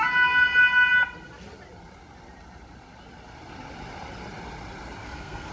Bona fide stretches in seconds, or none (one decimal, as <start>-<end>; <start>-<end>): 0.0-5.0